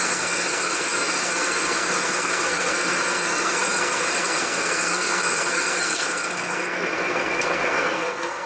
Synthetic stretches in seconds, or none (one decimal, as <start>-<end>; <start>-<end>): 0.0-8.5